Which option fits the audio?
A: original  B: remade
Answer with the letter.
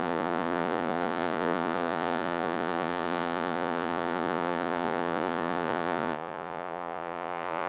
B